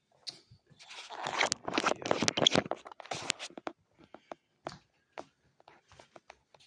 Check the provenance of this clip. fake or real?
real